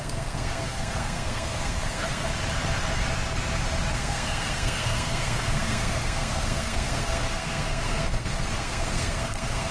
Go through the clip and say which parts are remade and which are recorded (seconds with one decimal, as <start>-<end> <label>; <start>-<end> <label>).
0.0-2.3 remade; 2.3-3.9 recorded; 3.9-9.7 remade